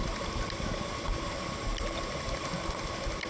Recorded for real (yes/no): yes